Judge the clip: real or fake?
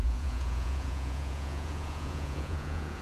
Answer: fake